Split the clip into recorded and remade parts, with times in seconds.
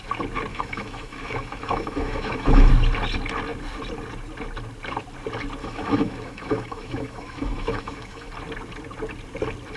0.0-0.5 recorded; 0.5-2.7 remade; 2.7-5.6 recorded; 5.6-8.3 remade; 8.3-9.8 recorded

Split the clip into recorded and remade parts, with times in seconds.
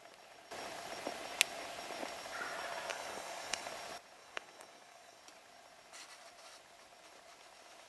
0.0-2.9 recorded; 2.9-3.7 remade; 3.7-4.2 recorded; 4.2-5.2 remade; 5.2-7.9 recorded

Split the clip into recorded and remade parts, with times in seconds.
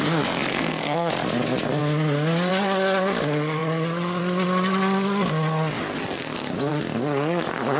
0.0-0.5 recorded; 0.5-1.1 remade; 1.1-7.8 recorded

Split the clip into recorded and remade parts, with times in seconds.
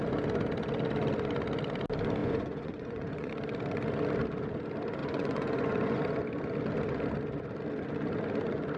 0.0-2.2 recorded; 2.2-3.3 remade; 3.3-5.0 recorded; 5.0-6.0 remade; 6.0-8.8 recorded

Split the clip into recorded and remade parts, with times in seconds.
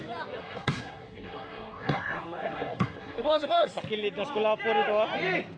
0.0-0.4 recorded; 0.4-3.8 remade; 3.8-5.6 recorded